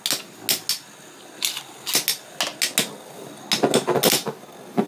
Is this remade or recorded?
recorded